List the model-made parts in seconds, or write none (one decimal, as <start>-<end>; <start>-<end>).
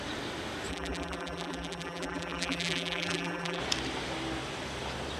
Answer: 0.7-3.6